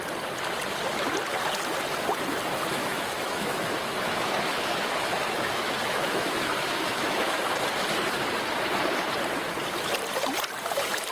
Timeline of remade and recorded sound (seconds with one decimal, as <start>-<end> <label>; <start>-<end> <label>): 0.0-2.8 recorded; 2.8-7.4 remade; 7.4-11.1 recorded